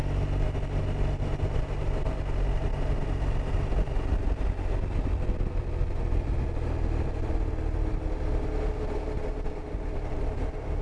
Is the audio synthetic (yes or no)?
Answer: no